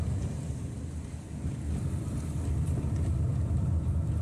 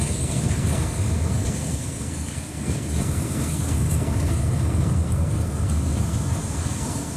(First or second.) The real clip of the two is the first